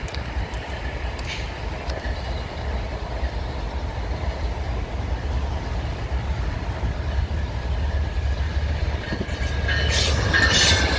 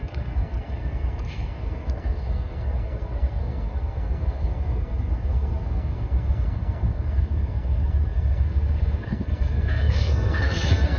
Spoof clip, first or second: second